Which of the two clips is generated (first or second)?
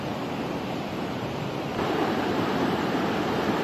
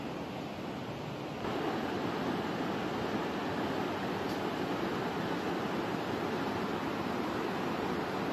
first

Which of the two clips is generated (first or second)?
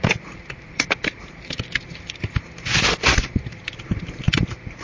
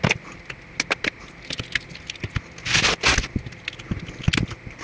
first